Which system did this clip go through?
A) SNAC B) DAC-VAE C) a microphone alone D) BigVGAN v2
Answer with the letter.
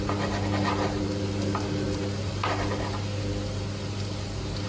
C